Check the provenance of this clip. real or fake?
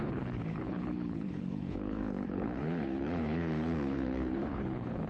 fake